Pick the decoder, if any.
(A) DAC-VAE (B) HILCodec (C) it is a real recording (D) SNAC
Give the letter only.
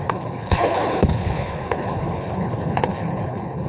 B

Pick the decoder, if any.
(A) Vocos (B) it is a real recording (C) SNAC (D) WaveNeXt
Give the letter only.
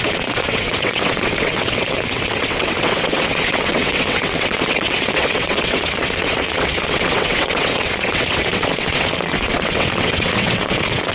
D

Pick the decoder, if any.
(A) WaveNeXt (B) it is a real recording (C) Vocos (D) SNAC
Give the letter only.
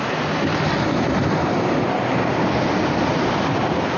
B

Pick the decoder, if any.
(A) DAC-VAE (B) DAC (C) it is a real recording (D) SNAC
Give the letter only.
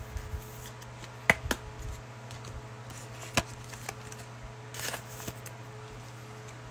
C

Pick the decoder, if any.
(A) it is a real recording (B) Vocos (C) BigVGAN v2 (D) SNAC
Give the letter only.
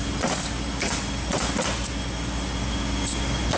A